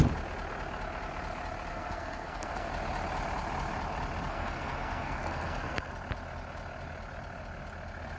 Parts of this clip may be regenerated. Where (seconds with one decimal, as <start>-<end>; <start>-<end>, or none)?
1.7-2.7; 4.3-5.9